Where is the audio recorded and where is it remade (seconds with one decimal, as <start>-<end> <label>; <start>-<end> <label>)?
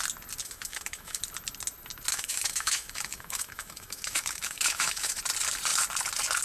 0.0-0.4 recorded; 0.4-1.2 remade; 1.2-2.1 recorded; 2.1-5.2 remade; 5.2-6.4 recorded